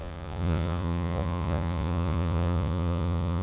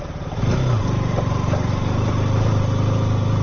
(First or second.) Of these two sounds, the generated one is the first